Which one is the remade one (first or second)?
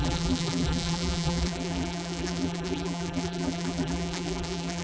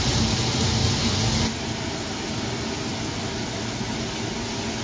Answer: first